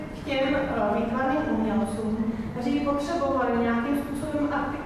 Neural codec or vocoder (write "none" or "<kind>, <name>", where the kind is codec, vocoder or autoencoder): none